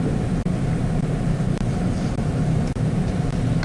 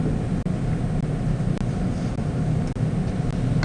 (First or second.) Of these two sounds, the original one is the second